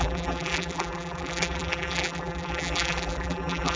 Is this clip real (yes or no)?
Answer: no